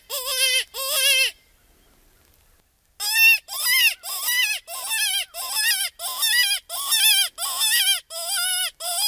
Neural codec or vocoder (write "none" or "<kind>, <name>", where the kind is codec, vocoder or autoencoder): none